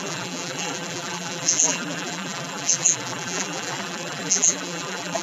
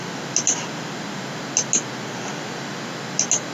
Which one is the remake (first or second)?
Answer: first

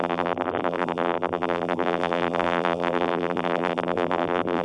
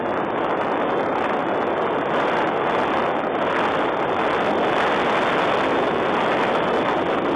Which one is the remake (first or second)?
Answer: first